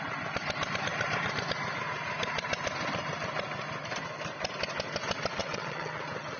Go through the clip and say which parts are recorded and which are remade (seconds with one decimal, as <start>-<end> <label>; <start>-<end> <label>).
0.0-5.4 recorded; 5.4-6.0 remade; 6.0-6.4 recorded